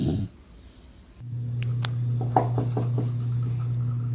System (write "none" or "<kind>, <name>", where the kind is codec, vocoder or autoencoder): none